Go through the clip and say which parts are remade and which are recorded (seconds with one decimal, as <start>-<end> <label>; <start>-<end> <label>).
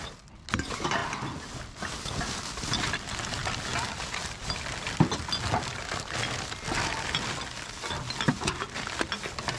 0.0-9.6 recorded